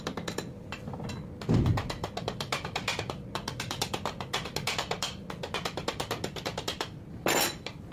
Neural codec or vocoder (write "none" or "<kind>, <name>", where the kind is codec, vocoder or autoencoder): none